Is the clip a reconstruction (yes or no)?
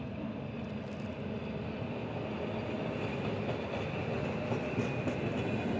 no